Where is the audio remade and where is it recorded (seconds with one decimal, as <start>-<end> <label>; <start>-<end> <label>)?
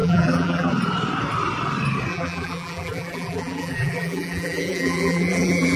0.0-0.7 remade; 0.7-2.1 recorded; 2.1-5.8 remade